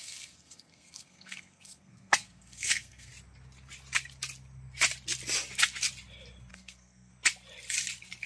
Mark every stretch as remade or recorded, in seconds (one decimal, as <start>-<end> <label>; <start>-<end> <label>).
0.0-3.1 remade; 3.1-6.5 recorded; 6.5-7.1 remade; 7.1-8.3 recorded